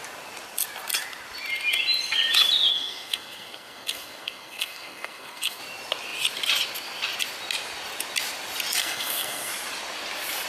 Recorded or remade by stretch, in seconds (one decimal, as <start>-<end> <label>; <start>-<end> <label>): 0.0-2.7 recorded; 2.7-5.6 remade; 5.6-8.8 recorded; 8.8-9.5 remade; 9.5-10.5 recorded